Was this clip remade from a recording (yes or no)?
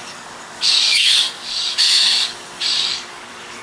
yes